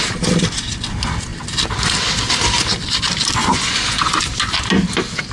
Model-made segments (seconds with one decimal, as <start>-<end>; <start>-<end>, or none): 3.4-4.2